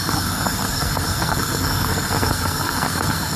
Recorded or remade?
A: remade